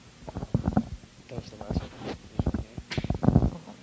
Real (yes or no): yes